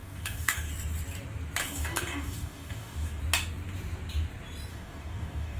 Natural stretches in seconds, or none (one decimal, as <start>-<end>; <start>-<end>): 0.7-1.6; 3.2-4.7